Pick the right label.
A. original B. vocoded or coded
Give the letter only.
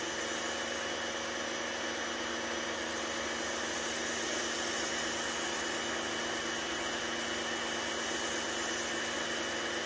A